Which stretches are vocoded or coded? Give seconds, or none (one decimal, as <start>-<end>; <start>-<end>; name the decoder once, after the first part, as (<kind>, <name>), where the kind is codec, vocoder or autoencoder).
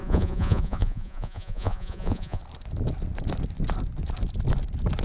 0.0-2.4 (vocoder, Vocos)